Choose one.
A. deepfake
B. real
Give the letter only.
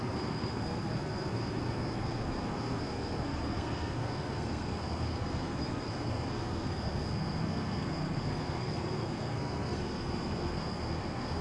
A